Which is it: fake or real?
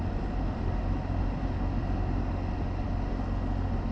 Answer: real